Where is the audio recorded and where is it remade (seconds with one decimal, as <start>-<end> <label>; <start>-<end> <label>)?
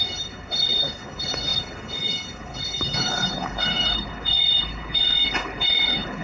0.0-6.2 remade